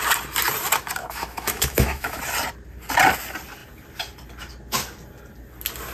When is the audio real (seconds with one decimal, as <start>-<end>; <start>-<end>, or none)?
0.0-1.0; 2.2-5.9